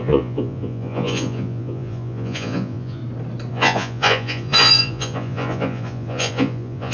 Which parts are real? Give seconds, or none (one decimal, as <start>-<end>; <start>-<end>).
3.0-3.5